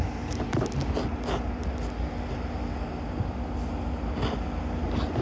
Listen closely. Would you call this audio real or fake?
real